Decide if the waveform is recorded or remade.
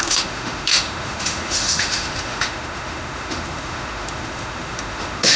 remade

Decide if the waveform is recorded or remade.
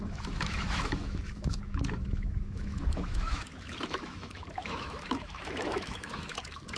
remade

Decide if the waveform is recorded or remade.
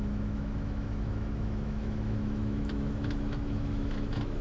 remade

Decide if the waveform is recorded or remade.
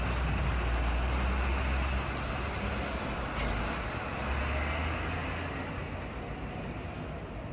recorded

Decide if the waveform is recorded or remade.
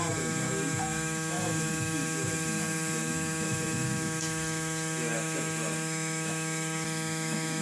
remade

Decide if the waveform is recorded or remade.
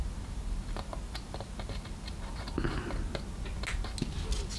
recorded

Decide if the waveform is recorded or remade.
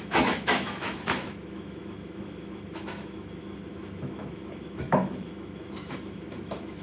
remade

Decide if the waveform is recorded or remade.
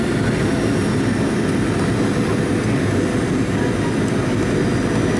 recorded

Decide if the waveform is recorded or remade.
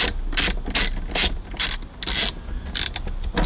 recorded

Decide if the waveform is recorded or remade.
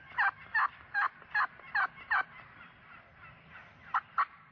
recorded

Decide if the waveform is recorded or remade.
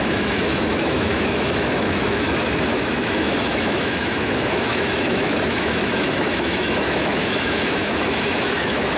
remade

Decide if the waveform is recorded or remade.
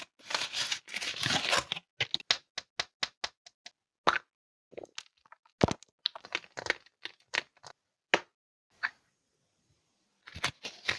recorded